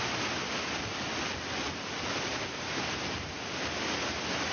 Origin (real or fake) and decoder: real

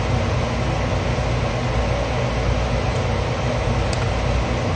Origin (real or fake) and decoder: real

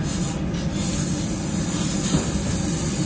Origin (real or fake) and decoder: real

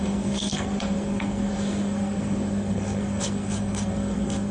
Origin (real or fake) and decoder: fake, codec, SNAC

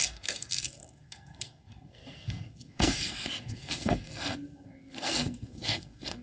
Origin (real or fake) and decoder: fake, codec, SNAC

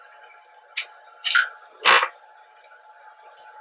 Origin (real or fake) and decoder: real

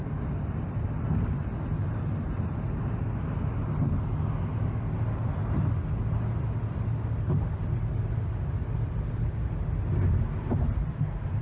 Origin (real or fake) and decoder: real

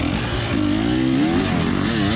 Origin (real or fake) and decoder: real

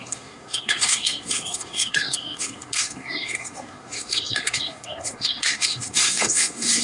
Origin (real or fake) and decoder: fake, codec, SNAC